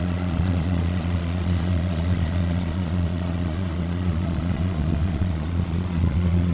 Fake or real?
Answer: fake